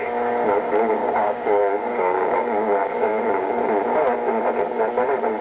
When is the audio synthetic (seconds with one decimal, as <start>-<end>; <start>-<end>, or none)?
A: 1.0-3.6